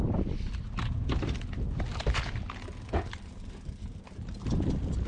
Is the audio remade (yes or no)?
no